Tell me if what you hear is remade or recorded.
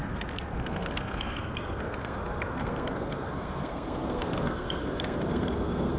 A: remade